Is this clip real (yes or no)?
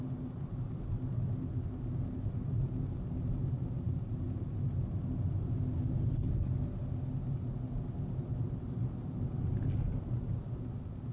yes